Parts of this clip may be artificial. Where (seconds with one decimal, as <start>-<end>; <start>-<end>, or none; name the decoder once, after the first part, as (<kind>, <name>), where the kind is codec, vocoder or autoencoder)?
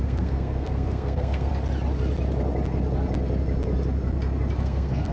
0.0-1.5 (codec, SNAC); 4.6-5.1